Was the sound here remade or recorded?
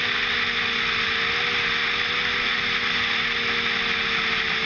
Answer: recorded